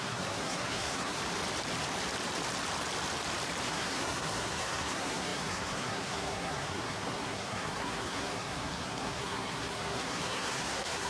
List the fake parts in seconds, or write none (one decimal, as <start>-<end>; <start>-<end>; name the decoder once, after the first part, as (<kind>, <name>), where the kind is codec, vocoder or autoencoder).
0.0-1.2 (codec, SNAC); 3.7-11.1